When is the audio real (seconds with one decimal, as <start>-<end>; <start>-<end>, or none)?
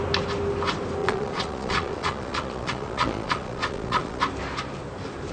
0.0-1.0; 4.2-5.3